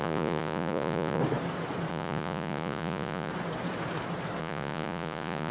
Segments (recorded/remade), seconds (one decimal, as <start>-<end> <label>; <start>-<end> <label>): 0.0-1.2 remade; 1.2-1.9 recorded; 1.9-3.3 remade; 3.3-4.4 recorded; 4.4-5.5 remade